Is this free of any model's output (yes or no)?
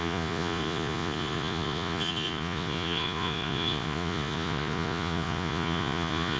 no